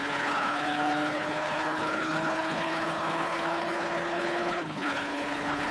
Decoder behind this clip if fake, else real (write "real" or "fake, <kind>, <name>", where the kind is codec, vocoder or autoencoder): fake, codec, HILCodec